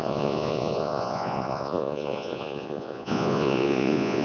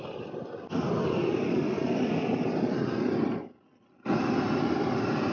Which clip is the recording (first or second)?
second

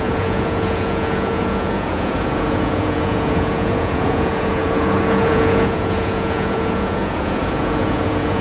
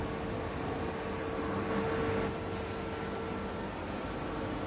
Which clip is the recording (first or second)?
second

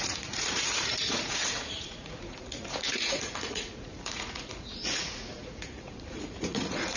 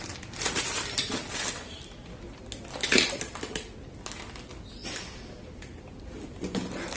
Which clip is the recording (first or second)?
second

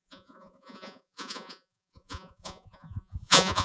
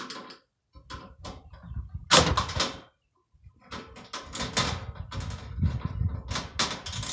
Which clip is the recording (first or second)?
second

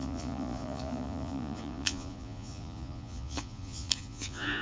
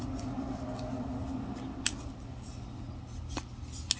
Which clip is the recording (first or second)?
second